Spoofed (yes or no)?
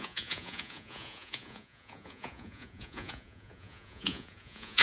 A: yes